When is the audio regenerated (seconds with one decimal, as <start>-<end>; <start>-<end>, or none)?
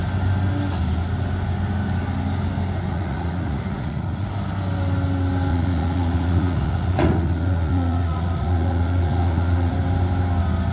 2.9-4.3; 5.5-9.7